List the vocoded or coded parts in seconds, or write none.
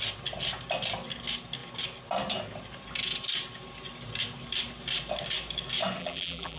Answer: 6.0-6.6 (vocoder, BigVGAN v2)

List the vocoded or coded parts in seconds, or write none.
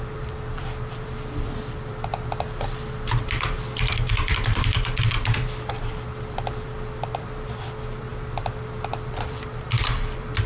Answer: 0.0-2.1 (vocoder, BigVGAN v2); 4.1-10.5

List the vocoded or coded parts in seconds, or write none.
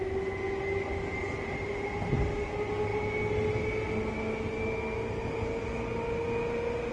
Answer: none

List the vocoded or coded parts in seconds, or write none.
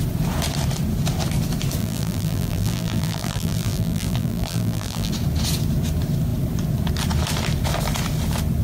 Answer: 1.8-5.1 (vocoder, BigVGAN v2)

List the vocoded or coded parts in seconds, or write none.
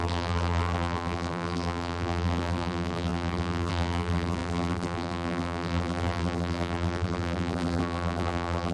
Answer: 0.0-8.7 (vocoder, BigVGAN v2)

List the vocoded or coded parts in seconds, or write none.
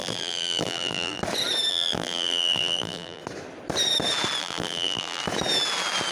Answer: 0.0-1.2 (vocoder, BigVGAN v2); 1.7-3.2; 4.4-5.2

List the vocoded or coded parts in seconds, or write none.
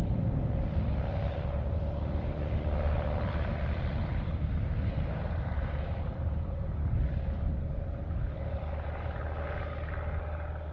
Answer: 4.1-7.0 (vocoder, BigVGAN v2)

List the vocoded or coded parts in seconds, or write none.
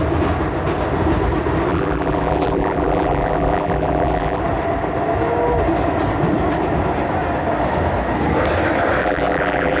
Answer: 1.7-4.4 (vocoder, BigVGAN v2); 9.0-9.8